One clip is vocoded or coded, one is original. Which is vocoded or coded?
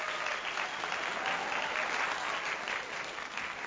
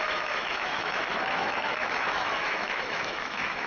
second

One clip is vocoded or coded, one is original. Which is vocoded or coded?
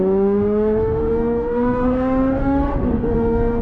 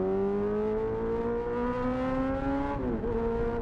first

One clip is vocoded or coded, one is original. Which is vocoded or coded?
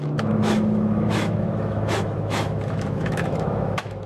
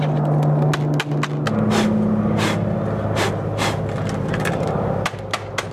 first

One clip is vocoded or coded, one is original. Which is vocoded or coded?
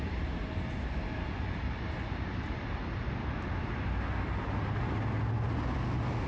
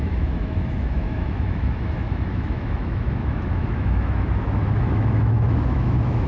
second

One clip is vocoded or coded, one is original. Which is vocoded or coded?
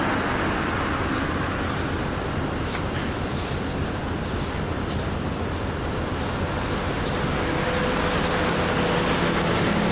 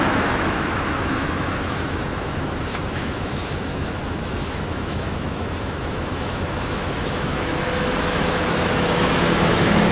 second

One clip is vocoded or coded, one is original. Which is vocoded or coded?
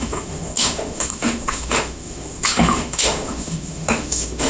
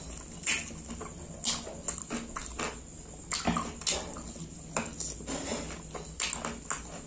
first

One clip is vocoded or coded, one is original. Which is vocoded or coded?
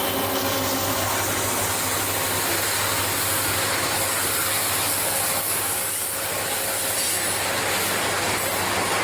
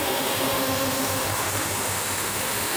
second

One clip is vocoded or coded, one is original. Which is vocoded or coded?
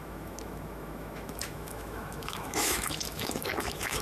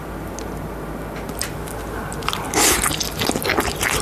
first